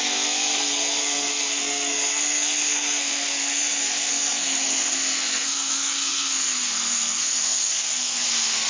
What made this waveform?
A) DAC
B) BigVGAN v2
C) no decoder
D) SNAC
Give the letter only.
D